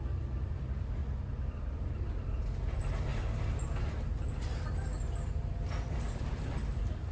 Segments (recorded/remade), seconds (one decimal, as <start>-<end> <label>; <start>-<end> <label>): 0.0-1.0 remade; 1.0-1.7 recorded; 1.7-3.1 remade; 3.1-5.5 recorded; 5.5-7.1 remade